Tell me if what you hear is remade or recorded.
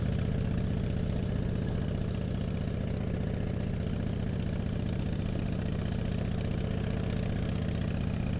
recorded